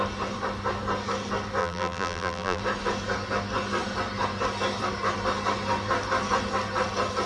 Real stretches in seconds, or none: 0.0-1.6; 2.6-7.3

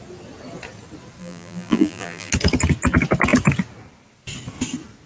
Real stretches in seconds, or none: 0.0-1.2; 2.3-5.1